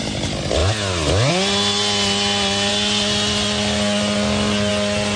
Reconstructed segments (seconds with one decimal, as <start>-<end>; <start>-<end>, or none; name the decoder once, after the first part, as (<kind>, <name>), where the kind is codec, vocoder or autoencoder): none